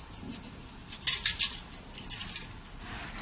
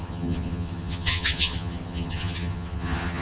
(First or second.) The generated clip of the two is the second